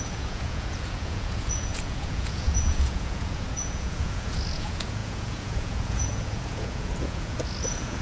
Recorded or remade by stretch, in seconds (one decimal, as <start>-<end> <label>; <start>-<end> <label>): 0.0-8.0 remade